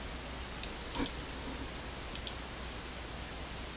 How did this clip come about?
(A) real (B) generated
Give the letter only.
A